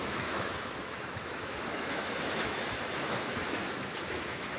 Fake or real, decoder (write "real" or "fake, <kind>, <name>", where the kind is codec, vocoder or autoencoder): fake, autoencoder, DAC-VAE